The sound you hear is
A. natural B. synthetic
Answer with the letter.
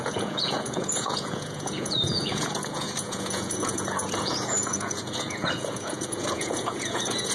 B